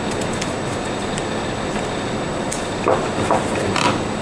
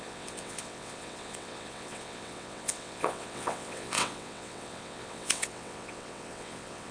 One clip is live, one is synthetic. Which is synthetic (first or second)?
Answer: second